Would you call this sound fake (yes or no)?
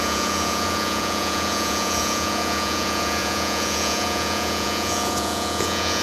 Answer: yes